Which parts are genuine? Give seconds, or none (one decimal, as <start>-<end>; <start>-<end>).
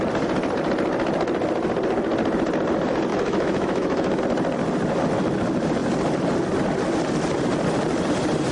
0.0-3.1; 4.2-8.5